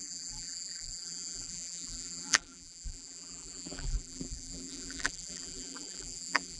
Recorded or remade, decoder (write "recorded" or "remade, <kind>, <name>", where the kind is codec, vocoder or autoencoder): remade, vocoder, BigVGAN v2